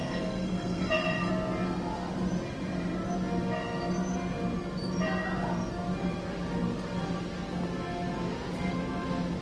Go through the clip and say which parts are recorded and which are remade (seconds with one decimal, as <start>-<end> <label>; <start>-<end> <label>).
0.0-1.3 remade; 1.3-9.4 recorded